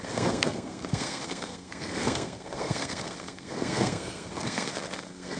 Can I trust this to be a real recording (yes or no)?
no